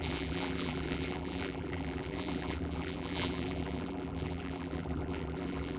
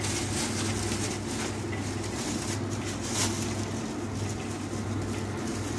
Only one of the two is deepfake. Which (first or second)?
first